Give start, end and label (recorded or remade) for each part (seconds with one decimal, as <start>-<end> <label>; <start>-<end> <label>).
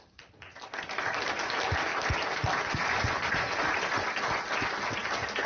0.0-0.5 recorded; 0.5-1.2 remade; 1.2-1.9 recorded; 1.9-4.9 remade; 4.9-5.5 recorded